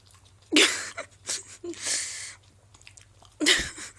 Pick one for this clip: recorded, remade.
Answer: recorded